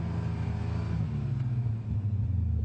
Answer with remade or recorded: recorded